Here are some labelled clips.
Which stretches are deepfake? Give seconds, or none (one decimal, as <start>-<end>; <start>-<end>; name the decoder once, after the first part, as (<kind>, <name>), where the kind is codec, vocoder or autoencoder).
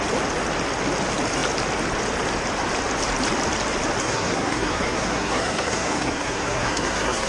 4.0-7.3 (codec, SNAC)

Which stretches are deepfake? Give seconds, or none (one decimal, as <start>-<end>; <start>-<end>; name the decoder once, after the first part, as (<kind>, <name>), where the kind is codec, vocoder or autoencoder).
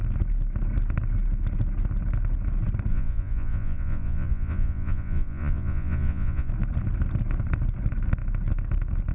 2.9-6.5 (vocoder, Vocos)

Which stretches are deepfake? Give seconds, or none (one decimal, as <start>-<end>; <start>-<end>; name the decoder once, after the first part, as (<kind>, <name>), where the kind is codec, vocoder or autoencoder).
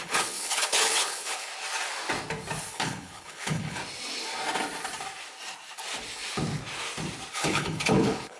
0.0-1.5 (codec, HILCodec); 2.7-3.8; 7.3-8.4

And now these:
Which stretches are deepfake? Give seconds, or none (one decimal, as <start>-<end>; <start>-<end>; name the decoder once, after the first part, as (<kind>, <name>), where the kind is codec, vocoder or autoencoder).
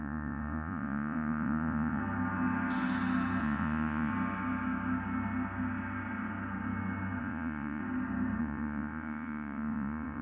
0.0-2.0 (vocoder, Vocos); 3.4-4.1; 7.2-7.8; 8.4-10.2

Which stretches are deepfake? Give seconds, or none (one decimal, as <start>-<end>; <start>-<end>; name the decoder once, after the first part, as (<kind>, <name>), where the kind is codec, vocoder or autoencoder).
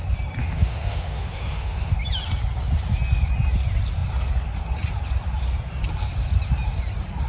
0.4-1.9 (autoencoder, DAC-VAE)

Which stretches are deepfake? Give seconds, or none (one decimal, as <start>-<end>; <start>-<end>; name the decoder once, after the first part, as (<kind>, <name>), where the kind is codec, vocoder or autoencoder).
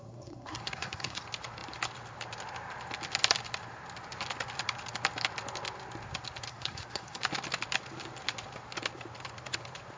0.0-1.2 (codec, SNAC); 6.5-7.2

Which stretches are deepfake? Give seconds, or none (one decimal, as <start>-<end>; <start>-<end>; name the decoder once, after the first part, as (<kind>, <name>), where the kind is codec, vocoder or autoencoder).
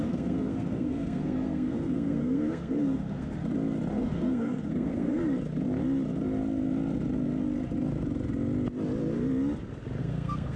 0.0-3.4 (codec, SNAC); 3.9-5.2; 10.0-10.6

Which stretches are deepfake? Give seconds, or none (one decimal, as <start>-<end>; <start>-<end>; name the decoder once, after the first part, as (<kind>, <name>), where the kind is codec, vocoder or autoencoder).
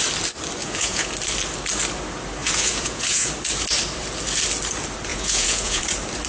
0.6-1.1 (vocoder, Vocos); 2.4-3.3; 5.1-5.8